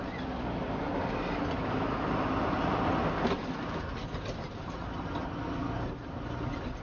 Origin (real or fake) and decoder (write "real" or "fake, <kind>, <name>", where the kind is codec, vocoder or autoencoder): real